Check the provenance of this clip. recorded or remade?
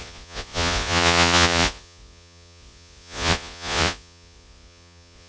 remade